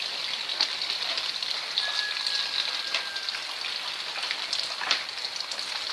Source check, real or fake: real